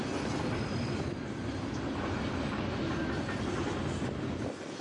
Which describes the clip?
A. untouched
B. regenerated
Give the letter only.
A